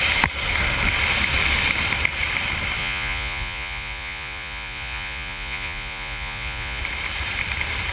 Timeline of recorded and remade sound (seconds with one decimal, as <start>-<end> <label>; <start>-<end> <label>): 0.0-2.8 recorded; 2.8-6.8 remade; 6.8-7.9 recorded